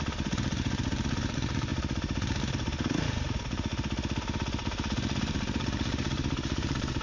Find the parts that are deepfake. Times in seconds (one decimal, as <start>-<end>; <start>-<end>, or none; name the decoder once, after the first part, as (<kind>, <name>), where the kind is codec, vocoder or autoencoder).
0.0-3.7 (vocoder, BigVGAN v2); 5.2-7.0